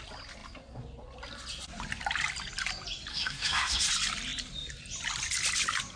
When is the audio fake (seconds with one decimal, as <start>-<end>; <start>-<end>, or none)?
3.1-3.9